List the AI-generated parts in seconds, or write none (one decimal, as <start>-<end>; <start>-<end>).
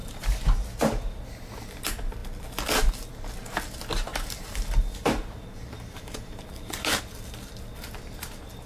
0.0-0.6; 4.1-7.0